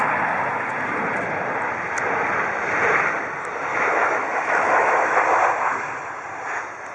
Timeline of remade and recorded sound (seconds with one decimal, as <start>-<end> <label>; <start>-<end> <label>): 0.0-3.7 recorded; 3.7-5.2 remade; 5.2-6.9 recorded